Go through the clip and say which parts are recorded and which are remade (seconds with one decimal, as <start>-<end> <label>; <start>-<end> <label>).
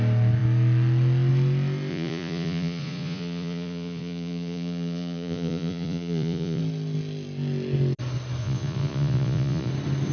0.0-1.9 recorded; 1.9-6.6 remade; 6.6-8.4 recorded; 8.4-9.7 remade; 9.7-10.1 recorded